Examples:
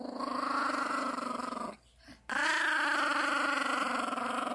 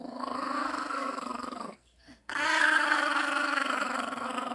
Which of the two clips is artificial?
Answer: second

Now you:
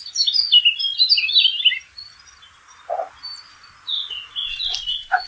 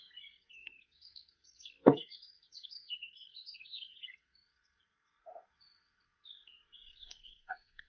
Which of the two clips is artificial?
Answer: second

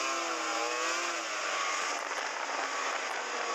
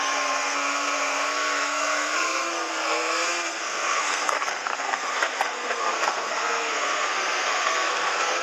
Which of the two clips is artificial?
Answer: second